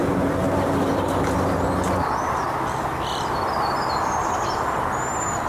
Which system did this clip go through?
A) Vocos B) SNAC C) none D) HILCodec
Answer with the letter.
C